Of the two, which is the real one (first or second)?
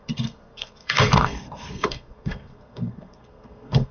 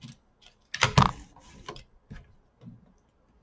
second